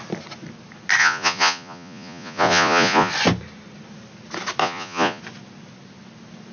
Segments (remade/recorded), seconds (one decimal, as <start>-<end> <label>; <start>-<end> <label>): 0.0-1.0 recorded; 1.0-3.1 remade; 3.1-4.6 recorded; 4.6-5.2 remade; 5.2-6.5 recorded